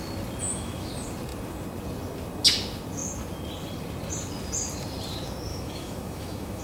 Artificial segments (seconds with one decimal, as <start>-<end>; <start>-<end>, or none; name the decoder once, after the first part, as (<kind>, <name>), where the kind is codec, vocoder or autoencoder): 0.4-0.9 (autoencoder, DAC-VAE); 5.5-6.6

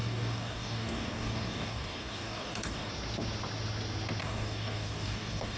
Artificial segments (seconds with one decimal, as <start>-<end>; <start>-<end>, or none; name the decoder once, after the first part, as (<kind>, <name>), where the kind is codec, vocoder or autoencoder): 0.0-2.9 (codec, DAC); 4.2-5.6

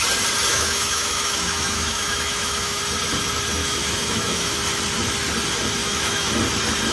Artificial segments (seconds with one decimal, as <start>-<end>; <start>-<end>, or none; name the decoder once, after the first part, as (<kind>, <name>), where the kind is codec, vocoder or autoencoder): 0.5-2.8 (autoencoder, DAC-VAE); 3.6-4.6; 5.8-6.3

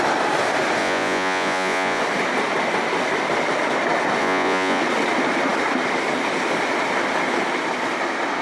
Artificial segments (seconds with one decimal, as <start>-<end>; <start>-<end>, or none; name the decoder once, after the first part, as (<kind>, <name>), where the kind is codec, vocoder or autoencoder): 0.8-2.0 (vocoder, Vocos); 4.2-4.8

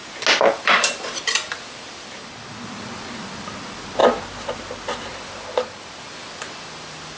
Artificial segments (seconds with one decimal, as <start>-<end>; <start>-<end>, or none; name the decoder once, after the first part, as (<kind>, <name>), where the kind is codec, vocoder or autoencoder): 0.5-4.0 (vocoder, BigVGAN v2); 5.1-7.2

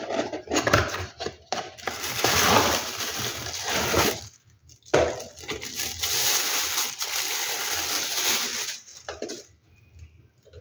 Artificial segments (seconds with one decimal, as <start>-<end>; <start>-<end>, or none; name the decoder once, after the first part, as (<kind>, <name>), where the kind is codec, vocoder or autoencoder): 0.0-4.6 (vocoder, BigVGAN v2); 6.9-8.9

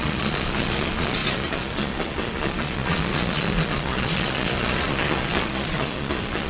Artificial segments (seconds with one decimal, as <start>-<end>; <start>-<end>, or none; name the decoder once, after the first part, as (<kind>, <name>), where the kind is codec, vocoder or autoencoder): 0.0-6.5 (vocoder, Vocos)